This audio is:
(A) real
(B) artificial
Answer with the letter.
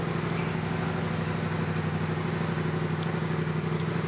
A